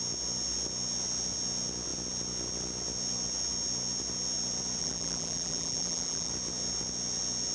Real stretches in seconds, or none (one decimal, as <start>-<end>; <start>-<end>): 0.0-4.8; 6.3-7.5